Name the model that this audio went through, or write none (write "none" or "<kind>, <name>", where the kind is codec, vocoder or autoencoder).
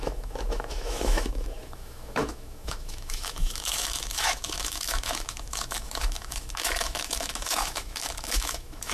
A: autoencoder, DAC-VAE